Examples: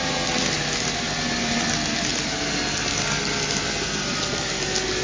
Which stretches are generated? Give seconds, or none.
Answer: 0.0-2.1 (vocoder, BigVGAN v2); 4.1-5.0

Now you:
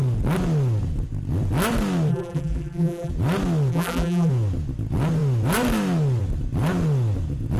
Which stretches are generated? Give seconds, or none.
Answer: 2.1-3.1 (vocoder, BigVGAN v2); 3.7-4.3

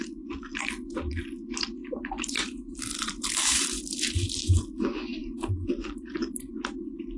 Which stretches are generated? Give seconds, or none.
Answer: 1.8-4.6 (vocoder, BigVGAN v2); 5.2-6.5

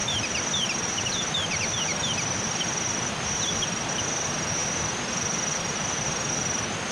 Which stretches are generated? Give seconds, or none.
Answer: 0.0-3.9 (vocoder, BigVGAN v2)

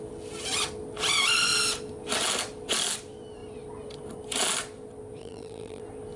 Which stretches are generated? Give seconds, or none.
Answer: 5.2-5.8 (vocoder, BigVGAN v2)

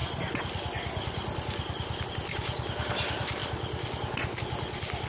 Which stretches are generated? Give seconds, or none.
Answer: none

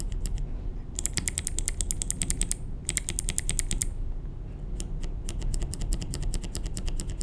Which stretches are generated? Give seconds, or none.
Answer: 0.7-1.2 (vocoder, BigVGAN v2)